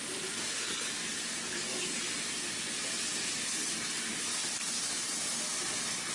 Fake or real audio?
real